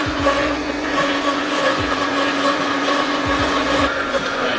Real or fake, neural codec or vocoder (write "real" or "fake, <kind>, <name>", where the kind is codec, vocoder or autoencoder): fake, vocoder, Vocos